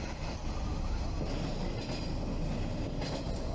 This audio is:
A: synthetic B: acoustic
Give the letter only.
B